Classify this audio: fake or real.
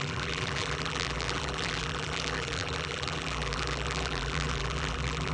fake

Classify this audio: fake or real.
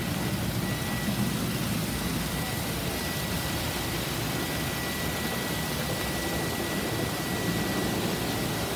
real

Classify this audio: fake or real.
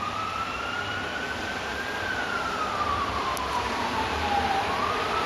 fake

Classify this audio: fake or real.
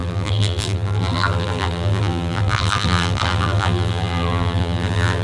fake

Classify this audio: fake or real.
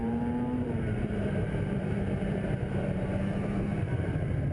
fake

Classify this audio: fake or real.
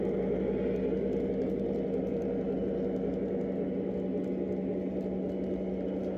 real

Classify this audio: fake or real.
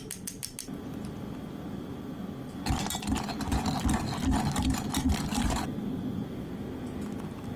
real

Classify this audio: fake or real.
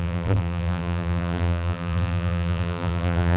fake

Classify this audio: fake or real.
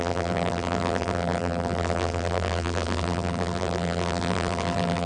fake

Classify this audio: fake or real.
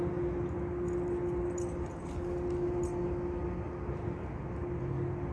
real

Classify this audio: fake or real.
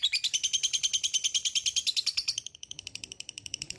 fake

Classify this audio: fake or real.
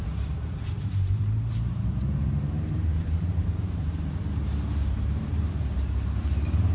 fake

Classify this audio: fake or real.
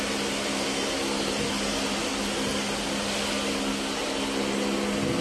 real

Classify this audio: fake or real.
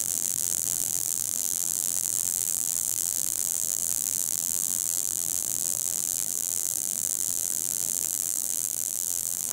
fake